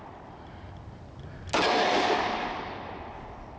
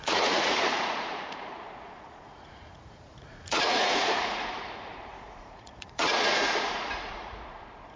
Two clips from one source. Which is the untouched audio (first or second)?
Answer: first